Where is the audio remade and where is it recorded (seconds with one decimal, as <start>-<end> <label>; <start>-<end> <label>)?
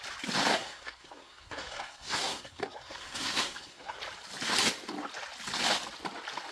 0.0-0.5 recorded; 0.5-4.0 remade; 4.0-6.5 recorded